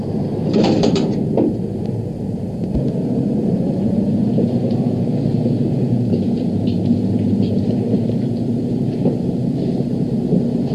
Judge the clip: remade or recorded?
remade